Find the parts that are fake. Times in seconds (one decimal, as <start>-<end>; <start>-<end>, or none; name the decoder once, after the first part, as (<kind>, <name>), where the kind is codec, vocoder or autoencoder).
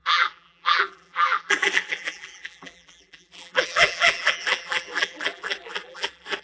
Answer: 0.0-6.4 (vocoder, BigVGAN v2)